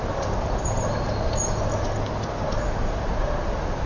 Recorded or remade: recorded